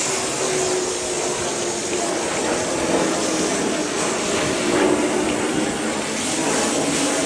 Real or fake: real